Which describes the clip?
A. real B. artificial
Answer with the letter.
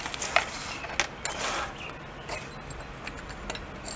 A